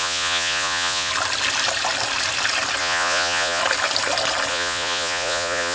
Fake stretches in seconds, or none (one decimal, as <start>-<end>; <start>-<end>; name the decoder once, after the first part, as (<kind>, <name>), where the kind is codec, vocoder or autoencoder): 0.0-1.1 (vocoder, Vocos); 2.8-3.6; 4.5-5.7